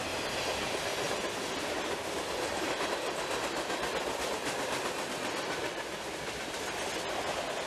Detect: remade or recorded recorded